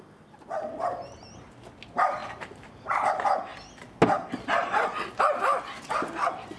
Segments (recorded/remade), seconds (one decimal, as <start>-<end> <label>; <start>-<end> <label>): 0.0-0.7 recorded; 0.7-1.3 remade; 1.3-2.2 recorded; 2.2-3.1 remade; 3.1-6.6 recorded

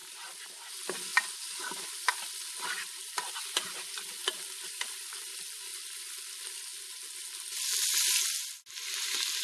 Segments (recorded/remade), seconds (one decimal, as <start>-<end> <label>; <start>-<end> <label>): 0.0-9.4 recorded

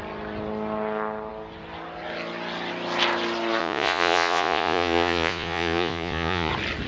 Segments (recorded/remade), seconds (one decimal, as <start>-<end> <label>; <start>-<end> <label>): 0.0-3.6 recorded; 3.6-6.5 remade; 6.5-6.9 recorded